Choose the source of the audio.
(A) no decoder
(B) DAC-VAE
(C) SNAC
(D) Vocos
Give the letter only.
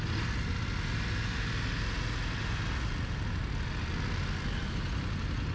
A